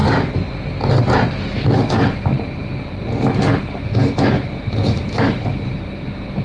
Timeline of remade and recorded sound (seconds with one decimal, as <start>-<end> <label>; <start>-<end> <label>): 0.0-6.4 recorded